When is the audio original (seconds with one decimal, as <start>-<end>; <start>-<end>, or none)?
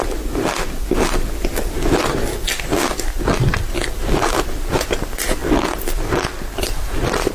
0.0-7.3